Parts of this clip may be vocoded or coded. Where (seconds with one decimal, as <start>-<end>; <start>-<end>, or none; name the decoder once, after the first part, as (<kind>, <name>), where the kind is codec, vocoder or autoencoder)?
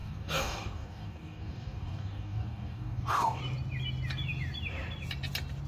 0.0-3.4 (codec, DAC)